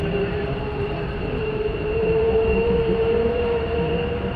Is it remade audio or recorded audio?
remade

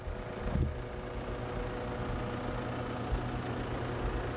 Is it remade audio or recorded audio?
recorded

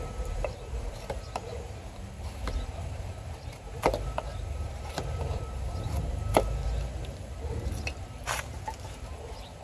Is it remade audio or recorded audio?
remade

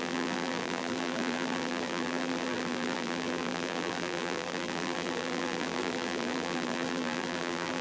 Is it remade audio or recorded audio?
remade